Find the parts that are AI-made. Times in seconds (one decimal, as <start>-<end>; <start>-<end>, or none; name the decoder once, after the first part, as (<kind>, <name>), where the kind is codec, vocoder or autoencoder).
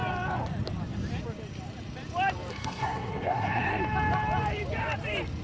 2.5-3.8 (codec, SNAC)